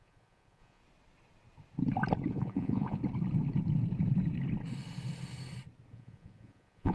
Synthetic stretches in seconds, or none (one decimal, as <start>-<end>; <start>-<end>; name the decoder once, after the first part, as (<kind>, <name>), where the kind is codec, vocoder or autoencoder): 0.0-0.8 (vocoder, Vocos); 2.3-3.0; 5.9-6.9